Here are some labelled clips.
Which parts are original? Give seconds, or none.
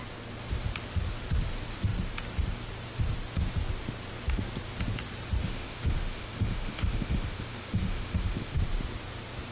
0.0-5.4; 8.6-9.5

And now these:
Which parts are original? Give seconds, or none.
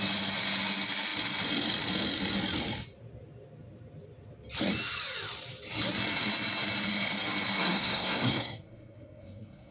0.0-7.6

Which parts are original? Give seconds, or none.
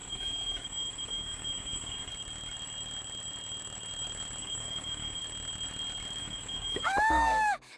2.1-4.4; 5.2-6.2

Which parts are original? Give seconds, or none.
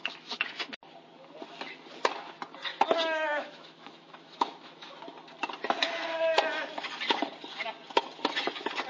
0.5-2.7; 4.9-8.9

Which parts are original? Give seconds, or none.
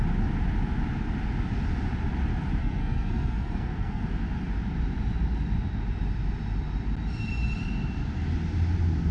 0.0-2.6; 4.0-9.1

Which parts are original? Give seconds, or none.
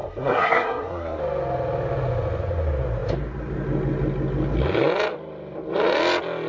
1.2-6.5